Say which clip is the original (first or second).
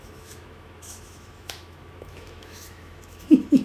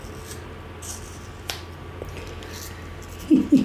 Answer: second